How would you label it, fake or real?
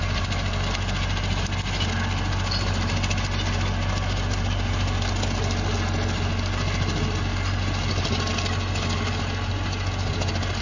real